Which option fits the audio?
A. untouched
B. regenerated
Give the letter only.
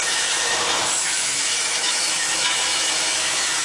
B